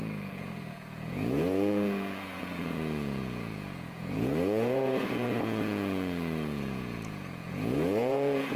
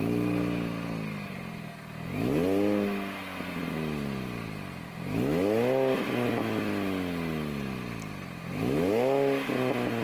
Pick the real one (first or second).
second